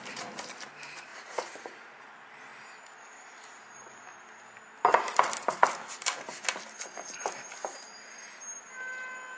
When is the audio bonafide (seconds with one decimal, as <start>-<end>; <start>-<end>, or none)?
0.0-1.1; 2.0-9.4